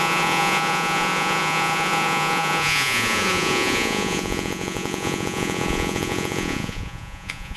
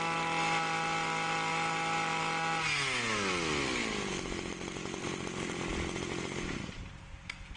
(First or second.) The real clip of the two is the second